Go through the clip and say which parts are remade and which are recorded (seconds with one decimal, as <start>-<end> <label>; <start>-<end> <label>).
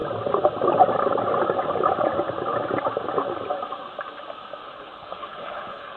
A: 0.0-4.6 recorded; 4.6-6.0 remade